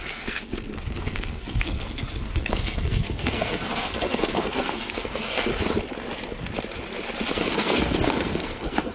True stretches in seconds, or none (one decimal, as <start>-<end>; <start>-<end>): 5.5-7.3